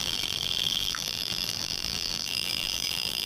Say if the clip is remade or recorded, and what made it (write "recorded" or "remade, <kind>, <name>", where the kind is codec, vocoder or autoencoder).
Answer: remade, vocoder, BigVGAN v2